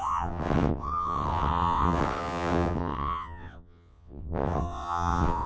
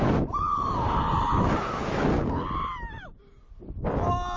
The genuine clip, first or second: second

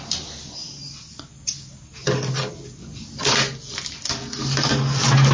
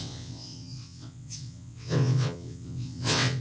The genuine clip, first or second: first